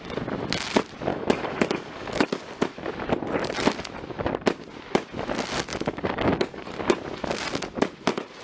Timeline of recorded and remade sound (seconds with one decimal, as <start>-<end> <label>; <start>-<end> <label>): 0.0-1.1 recorded; 1.1-2.9 remade; 2.9-5.7 recorded; 5.7-6.7 remade; 6.7-8.4 recorded